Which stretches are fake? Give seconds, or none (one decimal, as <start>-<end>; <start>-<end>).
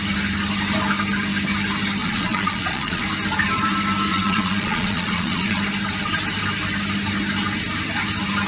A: 2.0-3.0; 4.1-5.6